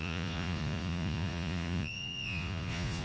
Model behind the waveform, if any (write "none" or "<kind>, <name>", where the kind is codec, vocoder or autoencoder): vocoder, Vocos